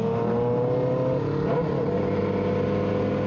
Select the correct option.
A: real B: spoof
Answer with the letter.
A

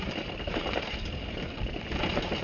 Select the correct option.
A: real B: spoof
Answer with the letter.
A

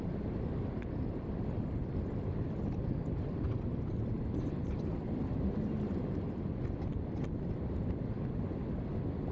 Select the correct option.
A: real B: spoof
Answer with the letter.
A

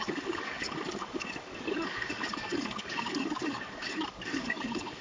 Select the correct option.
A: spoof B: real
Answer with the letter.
A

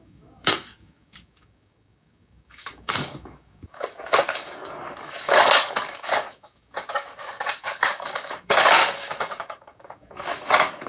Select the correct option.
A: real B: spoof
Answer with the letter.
B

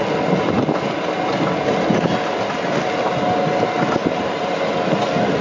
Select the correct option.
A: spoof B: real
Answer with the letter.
B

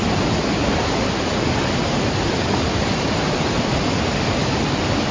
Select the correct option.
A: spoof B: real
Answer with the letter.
B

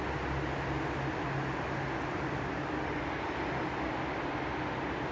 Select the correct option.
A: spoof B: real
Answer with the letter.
B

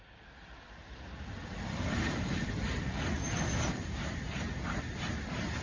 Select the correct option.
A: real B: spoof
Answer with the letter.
A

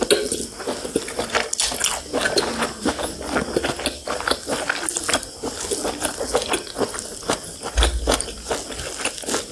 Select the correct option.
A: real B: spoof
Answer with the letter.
A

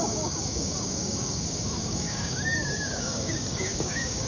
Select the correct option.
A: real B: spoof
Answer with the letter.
B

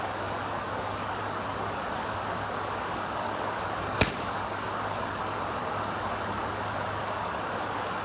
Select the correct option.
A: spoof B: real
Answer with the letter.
A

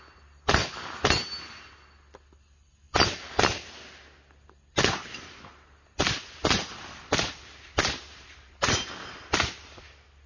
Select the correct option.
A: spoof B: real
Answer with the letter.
B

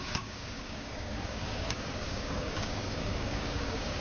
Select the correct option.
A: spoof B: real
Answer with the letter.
A